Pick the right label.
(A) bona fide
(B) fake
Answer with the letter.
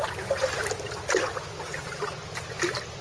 A